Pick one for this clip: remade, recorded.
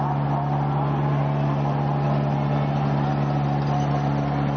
recorded